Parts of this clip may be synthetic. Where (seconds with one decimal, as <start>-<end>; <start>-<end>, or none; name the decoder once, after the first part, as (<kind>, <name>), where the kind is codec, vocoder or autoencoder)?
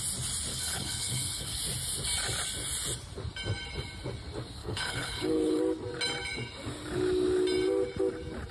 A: 0.5-1.6 (codec, HILCodec); 4.6-5.6